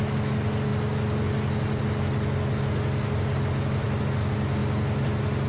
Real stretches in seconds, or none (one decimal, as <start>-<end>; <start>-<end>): 0.0-5.5